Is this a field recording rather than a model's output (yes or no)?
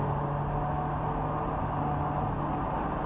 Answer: yes